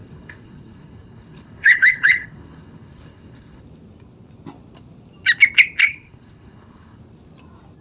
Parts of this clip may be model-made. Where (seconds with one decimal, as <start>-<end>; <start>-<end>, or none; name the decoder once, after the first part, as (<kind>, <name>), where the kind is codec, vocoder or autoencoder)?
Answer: 0.0-3.6 (codec, HILCodec); 5.8-7.0